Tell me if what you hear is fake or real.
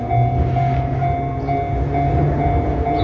real